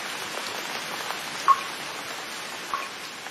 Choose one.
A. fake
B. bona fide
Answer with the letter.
B